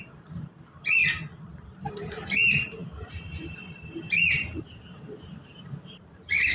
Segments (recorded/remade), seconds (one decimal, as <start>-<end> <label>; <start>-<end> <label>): 0.0-1.0 remade; 1.0-1.9 recorded; 1.9-6.5 remade